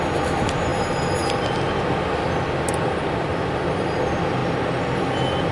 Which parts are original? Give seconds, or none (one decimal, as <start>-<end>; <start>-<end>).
0.0-5.5